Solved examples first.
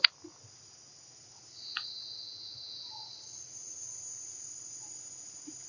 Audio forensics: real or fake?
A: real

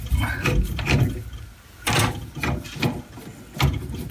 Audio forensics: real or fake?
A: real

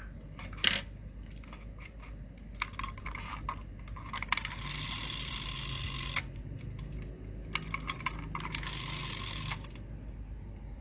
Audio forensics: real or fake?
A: real